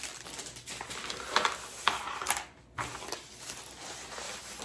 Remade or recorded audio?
recorded